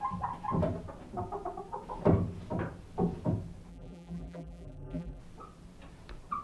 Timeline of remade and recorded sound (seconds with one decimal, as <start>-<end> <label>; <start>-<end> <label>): 0.0-3.7 recorded; 3.7-5.2 remade; 5.2-6.4 recorded